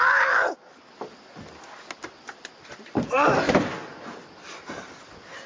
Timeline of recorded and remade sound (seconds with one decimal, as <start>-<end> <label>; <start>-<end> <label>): 0.0-5.5 recorded